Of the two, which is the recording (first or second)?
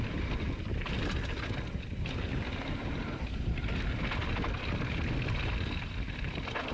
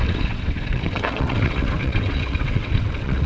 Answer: first